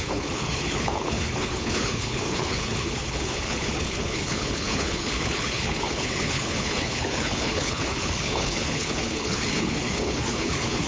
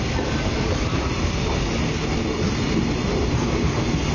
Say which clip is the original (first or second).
second